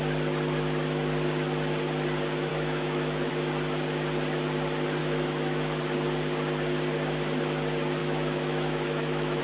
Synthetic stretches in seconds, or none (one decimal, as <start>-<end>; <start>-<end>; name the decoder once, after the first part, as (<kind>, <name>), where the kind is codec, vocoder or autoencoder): 2.5-3.3 (autoencoder, DAC-VAE); 5.0-5.8; 8.0-9.4